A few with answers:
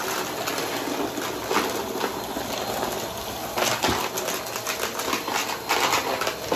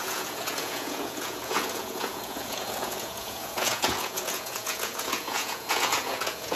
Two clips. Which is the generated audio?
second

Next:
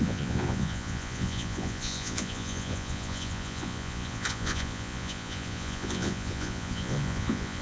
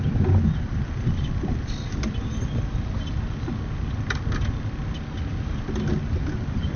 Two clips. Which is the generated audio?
first